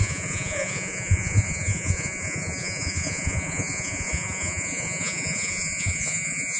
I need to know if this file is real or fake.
fake